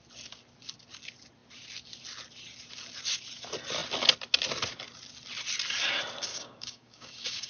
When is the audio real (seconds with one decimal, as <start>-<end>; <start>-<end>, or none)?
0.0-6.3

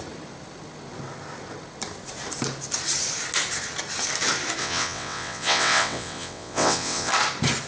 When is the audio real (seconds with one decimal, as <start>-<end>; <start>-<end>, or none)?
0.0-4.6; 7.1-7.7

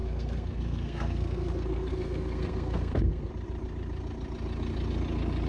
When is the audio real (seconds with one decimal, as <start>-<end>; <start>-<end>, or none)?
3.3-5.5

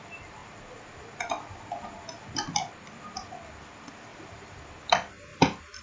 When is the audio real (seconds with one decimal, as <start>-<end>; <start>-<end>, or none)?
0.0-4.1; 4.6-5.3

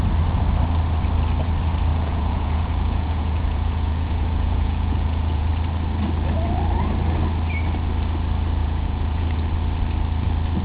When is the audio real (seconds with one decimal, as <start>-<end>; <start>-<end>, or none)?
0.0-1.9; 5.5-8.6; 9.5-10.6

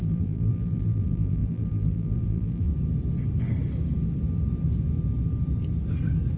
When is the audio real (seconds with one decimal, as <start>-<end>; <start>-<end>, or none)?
2.7-6.4